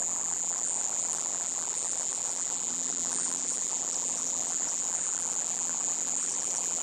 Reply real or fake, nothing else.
fake